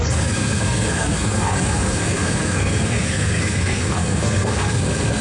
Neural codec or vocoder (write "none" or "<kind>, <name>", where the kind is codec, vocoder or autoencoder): codec, SNAC